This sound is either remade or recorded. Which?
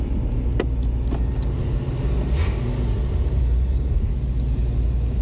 recorded